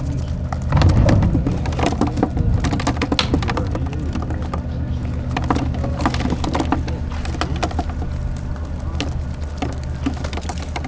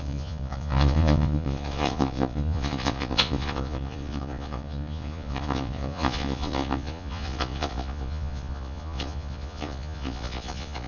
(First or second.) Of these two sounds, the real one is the first